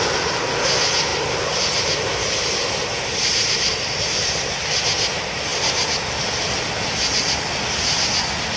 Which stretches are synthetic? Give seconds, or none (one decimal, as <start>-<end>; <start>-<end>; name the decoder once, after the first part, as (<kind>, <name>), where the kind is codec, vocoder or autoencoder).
1.1-4.6 (vocoder, BigVGAN v2)